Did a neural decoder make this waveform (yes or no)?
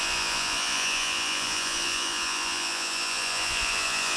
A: yes